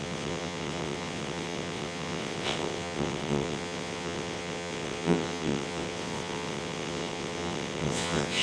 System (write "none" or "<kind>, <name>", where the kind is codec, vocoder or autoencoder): vocoder, WaveNeXt